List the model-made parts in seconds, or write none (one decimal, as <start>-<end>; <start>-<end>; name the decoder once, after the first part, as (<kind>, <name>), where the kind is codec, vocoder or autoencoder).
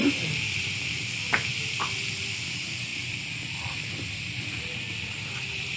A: 0.0-5.8 (vocoder, BigVGAN v2)